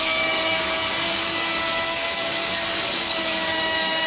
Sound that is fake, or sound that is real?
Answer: fake